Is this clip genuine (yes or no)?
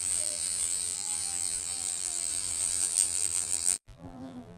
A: no